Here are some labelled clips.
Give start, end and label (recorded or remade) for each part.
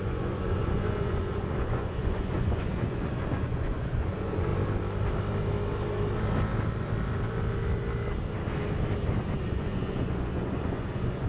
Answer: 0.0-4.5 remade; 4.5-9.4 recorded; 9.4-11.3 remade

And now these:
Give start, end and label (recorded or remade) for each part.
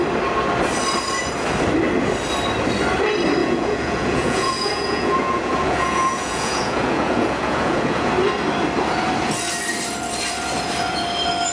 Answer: 0.0-3.4 recorded; 3.4-8.1 remade; 8.1-11.5 recorded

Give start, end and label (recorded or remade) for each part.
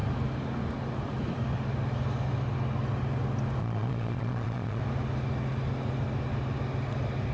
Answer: 0.0-3.6 recorded; 3.6-4.8 remade; 4.8-7.3 recorded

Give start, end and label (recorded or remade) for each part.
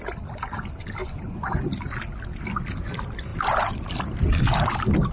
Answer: 0.0-1.0 recorded; 1.0-1.6 remade; 1.6-5.1 recorded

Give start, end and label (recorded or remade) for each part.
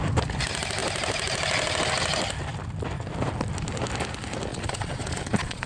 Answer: 0.0-4.5 recorded; 4.5-5.7 remade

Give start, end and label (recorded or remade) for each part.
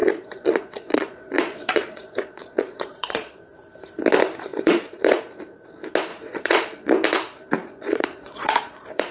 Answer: 0.0-3.4 remade; 3.4-4.5 recorded; 4.5-5.2 remade; 5.2-6.1 recorded; 6.1-6.9 remade; 6.9-7.6 recorded; 7.6-9.1 remade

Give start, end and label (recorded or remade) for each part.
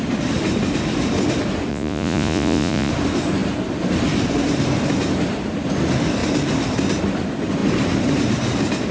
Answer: 0.0-1.7 recorded; 1.7-2.9 remade; 2.9-8.9 recorded